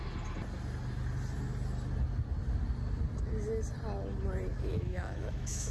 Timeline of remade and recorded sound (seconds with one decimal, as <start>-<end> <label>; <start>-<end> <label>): 0.0-4.5 recorded; 4.5-5.7 remade